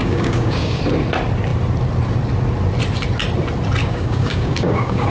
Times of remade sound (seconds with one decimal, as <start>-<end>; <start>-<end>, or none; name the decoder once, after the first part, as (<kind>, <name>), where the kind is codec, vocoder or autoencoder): 0.0-0.8 (codec, DAC); 3.8-5.1